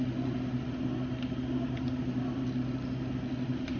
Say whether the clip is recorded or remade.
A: recorded